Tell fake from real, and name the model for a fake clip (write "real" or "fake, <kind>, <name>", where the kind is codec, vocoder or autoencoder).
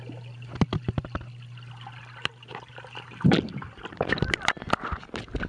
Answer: real